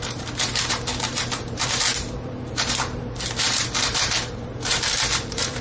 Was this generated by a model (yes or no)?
yes